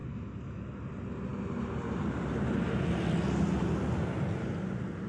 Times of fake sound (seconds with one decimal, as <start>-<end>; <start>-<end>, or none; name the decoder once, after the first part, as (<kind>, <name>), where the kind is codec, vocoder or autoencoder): none